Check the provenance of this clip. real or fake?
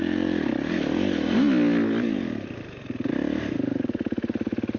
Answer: real